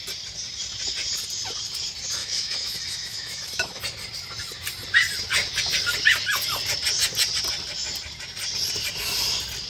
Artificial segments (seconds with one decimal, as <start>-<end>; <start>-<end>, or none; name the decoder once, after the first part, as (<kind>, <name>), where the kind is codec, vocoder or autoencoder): 2.2-3.8 (autoencoder, DAC-VAE)